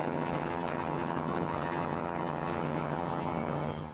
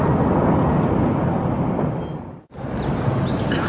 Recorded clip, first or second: second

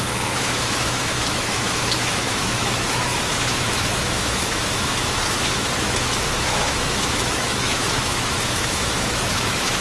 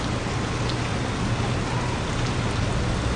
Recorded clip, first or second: second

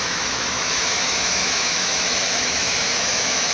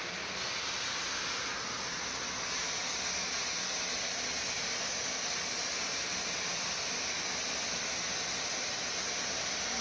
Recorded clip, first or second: second